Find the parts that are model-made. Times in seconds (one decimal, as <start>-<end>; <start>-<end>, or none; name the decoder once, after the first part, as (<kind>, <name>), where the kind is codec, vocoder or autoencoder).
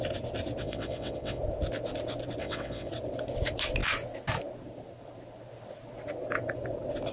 0.6-1.4 (vocoder, WaveNeXt); 2.4-2.9